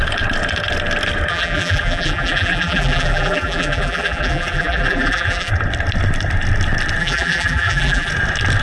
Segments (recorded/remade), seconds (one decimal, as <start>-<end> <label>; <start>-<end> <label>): 0.0-1.3 recorded; 1.3-5.5 remade; 5.5-7.0 recorded; 7.0-8.1 remade; 8.1-8.6 recorded